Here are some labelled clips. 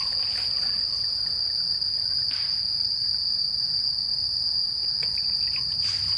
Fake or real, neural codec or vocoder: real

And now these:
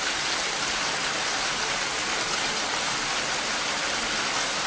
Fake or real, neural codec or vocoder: real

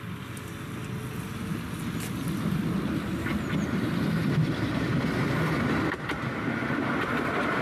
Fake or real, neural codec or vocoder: real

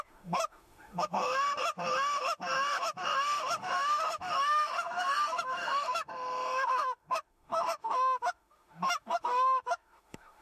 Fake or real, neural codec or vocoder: fake, autoencoder, DAC-VAE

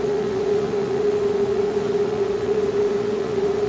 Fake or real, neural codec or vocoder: fake, vocoder, Vocos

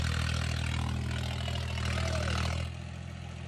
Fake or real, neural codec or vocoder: real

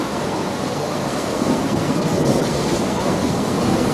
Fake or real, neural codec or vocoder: fake, codec, SNAC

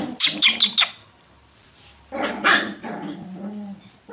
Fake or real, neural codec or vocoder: real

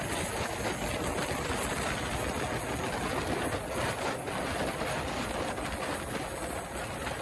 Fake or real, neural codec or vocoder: real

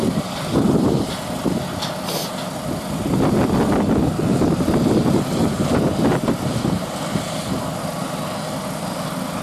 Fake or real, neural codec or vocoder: real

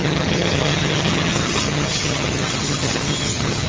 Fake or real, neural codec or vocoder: fake, vocoder, HiFi-GAN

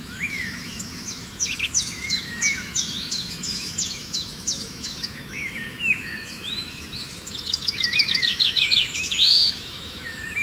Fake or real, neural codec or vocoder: fake, autoencoder, DAC-VAE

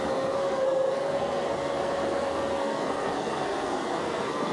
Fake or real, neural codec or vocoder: fake, codec, SNAC